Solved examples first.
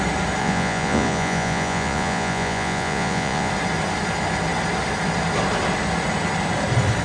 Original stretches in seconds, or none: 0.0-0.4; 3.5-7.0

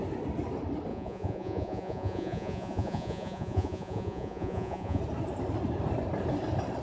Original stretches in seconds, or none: 0.0-0.9; 5.0-6.8

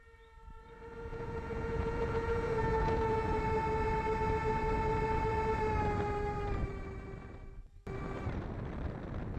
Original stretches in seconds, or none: 0.0-1.1; 3.4-9.4

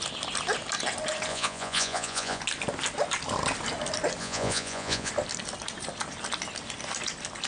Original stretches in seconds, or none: 0.0-1.3; 2.4-4.2; 5.1-7.5

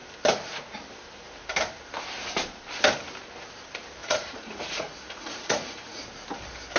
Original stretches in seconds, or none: 0.0-4.0; 6.0-6.8

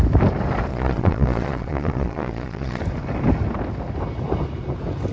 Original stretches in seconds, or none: 0.0-0.7; 2.8-5.1